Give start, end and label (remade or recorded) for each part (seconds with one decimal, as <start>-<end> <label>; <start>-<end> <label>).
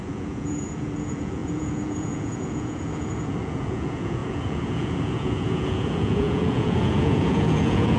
0.0-8.0 remade